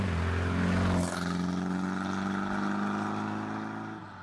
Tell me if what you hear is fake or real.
real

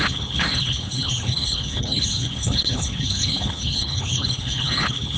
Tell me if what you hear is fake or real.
fake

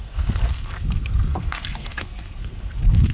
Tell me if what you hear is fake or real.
fake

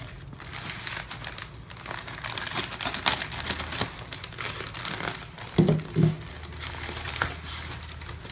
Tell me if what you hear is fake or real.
real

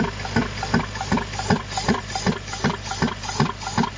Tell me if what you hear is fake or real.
real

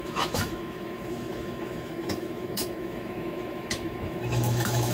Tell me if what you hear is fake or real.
fake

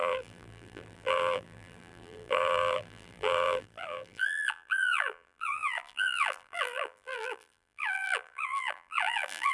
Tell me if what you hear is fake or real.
fake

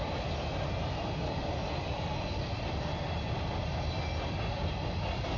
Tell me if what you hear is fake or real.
real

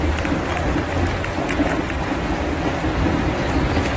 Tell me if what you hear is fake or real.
real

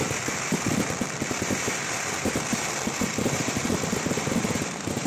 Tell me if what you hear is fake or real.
fake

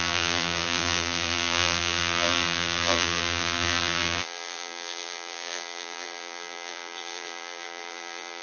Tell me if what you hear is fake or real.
fake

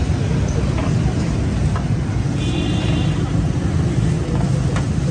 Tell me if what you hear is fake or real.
real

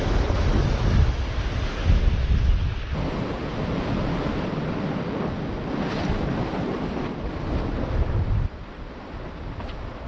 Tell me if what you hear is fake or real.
real